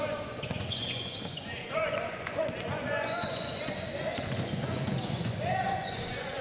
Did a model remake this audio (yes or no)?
yes